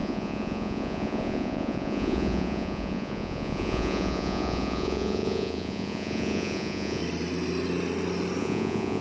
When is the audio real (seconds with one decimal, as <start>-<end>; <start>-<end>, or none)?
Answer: 7.0-8.4